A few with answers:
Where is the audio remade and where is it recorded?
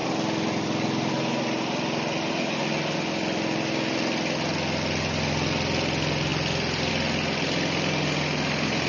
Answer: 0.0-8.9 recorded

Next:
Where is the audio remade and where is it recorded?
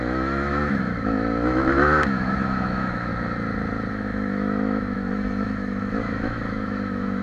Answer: 0.0-3.1 remade; 3.1-3.9 recorded; 3.9-7.2 remade